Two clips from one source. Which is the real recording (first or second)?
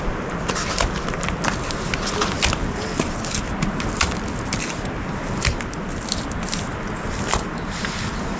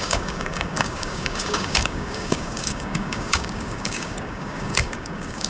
first